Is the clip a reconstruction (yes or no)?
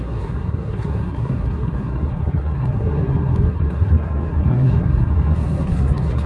yes